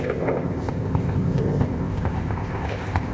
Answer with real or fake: fake